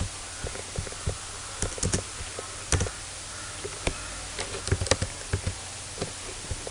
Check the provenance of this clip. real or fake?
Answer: real